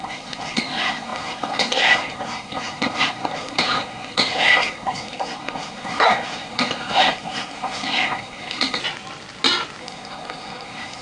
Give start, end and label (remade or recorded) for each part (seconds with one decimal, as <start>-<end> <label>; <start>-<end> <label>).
0.0-8.8 remade; 8.8-9.8 recorded; 9.8-11.0 remade